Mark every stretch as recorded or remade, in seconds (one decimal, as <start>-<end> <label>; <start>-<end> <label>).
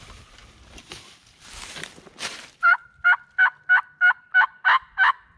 0.0-0.4 recorded; 0.4-3.6 remade; 3.6-5.4 recorded